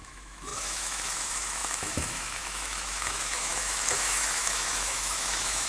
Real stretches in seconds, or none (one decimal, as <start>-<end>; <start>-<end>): none